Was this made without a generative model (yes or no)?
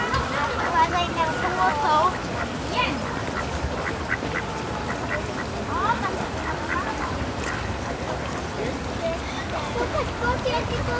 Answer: yes